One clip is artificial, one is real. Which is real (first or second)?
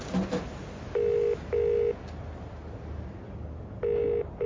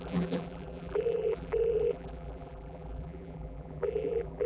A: first